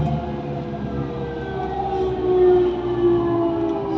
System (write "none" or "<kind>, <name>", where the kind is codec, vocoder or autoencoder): none